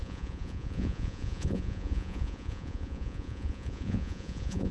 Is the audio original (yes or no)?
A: no